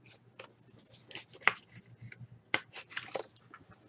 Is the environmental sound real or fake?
real